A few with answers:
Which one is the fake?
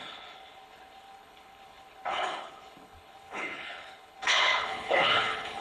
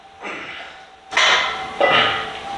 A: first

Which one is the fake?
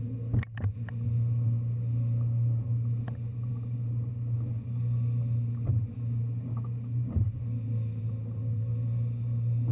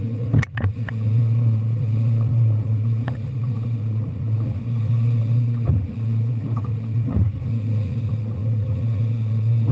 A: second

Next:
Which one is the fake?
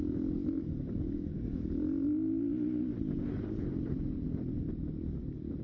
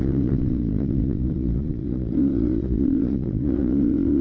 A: second